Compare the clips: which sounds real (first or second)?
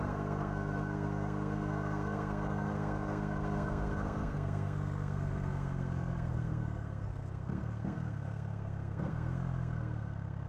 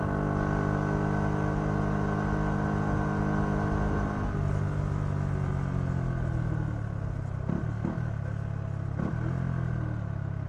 second